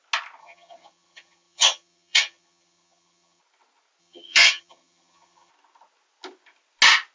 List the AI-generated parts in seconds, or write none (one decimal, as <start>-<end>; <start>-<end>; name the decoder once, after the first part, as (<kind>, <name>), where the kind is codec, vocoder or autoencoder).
0.4-3.4 (vocoder, HiFi-GAN); 4.0-5.5